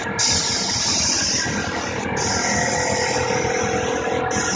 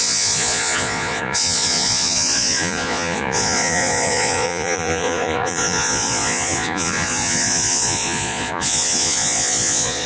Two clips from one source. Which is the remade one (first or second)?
second